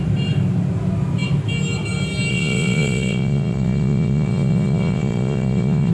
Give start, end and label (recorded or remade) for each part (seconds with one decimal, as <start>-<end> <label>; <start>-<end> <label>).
0.0-2.3 recorded; 2.3-5.9 remade